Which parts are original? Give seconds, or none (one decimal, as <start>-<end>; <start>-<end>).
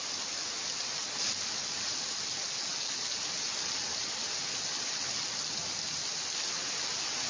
0.0-7.3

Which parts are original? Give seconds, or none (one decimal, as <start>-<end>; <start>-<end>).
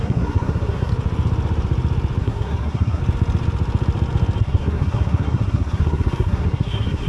0.9-2.2; 3.0-4.4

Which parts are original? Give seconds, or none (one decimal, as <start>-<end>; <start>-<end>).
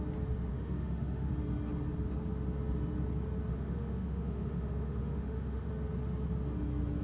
0.0-0.5; 1.3-3.5; 5.7-7.0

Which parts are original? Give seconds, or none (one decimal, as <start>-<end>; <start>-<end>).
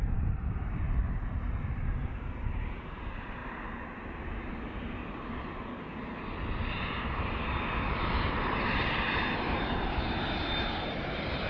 3.4-8.3